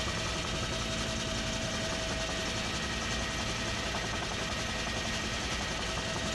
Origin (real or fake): real